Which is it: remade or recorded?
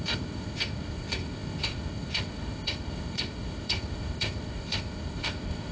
remade